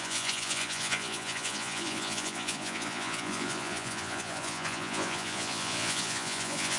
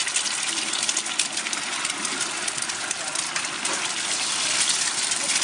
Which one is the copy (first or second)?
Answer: first